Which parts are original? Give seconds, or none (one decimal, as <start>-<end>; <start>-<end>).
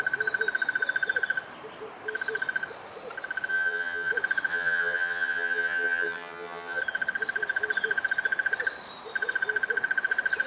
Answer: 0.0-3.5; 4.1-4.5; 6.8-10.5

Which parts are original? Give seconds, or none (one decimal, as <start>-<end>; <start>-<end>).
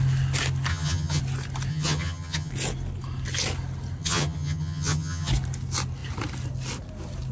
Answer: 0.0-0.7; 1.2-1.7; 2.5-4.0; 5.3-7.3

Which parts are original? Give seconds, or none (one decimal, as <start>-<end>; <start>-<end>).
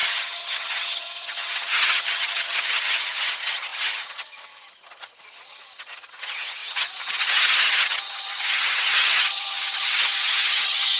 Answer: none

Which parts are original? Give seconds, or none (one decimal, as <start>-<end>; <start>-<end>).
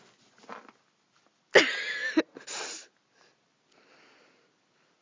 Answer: 0.0-5.0